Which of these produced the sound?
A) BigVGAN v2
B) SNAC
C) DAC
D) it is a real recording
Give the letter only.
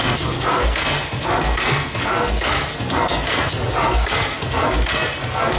B